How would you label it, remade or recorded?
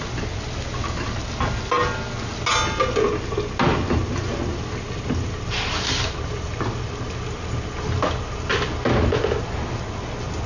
recorded